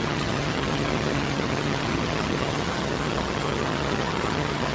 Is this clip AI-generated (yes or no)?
yes